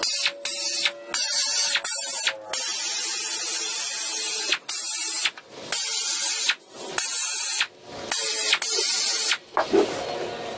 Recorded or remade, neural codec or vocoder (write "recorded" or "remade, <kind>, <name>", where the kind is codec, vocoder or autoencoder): recorded